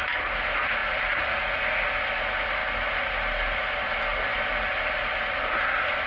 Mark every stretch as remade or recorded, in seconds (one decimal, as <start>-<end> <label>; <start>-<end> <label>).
0.0-6.1 recorded